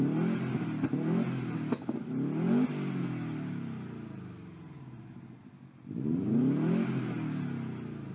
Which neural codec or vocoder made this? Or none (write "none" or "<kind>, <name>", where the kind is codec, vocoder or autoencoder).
none